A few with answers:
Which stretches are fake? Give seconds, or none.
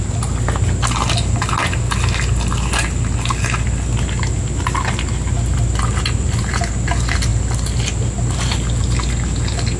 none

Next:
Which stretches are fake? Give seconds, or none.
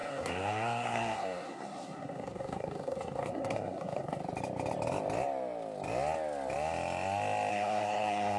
0.0-4.2 (codec, SNAC); 7.5-8.4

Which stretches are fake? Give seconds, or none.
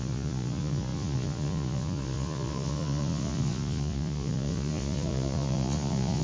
0.0-6.2 (vocoder, Vocos)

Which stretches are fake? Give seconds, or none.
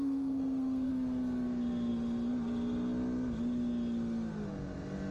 0.0-0.9 (codec, SNAC)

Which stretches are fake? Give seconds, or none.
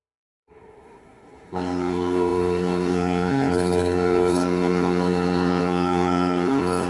0.0-6.9 (codec, SNAC)